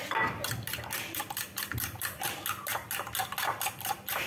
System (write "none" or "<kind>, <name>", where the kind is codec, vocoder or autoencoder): none